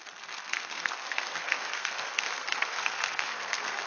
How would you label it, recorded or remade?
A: remade